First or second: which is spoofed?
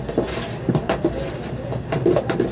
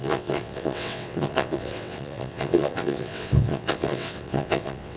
second